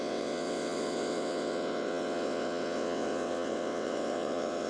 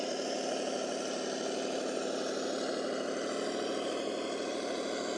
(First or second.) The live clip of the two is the second